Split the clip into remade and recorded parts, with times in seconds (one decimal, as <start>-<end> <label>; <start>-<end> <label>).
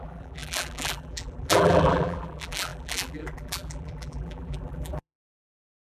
0.0-5.8 remade